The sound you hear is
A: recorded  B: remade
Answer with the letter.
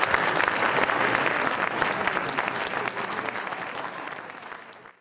A